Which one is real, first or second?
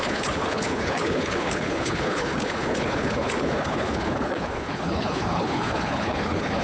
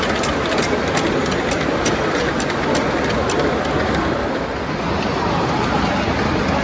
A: second